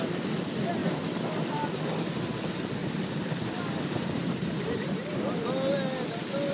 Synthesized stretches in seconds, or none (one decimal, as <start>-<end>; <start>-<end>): 2.8-4.9